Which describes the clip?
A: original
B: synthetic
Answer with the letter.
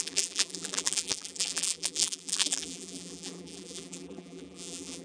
B